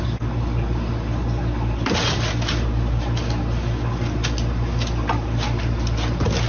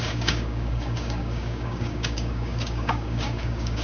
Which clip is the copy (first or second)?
second